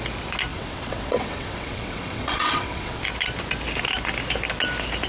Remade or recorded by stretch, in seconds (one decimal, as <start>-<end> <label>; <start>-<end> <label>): 0.0-0.5 recorded; 0.5-3.0 remade; 3.0-5.1 recorded

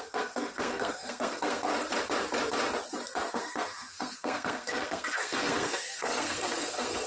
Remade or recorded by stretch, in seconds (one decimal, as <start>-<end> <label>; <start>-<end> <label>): 0.0-1.7 remade; 1.7-3.3 recorded; 3.3-7.1 remade

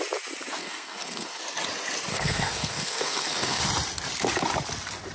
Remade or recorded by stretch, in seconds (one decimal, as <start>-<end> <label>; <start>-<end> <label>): 0.0-0.6 recorded; 0.6-1.4 remade; 1.4-2.1 recorded; 2.1-3.6 remade; 3.6-5.1 recorded